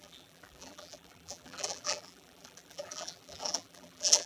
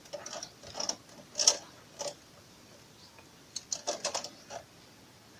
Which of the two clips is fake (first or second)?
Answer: first